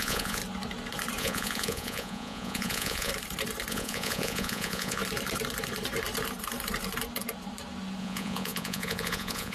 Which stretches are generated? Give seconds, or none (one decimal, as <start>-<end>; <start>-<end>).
0.0-0.4; 1.2-3.1; 3.7-5.0; 8.0-9.5